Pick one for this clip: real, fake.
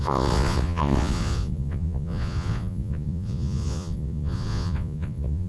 fake